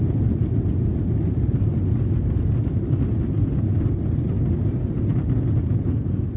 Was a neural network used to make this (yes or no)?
no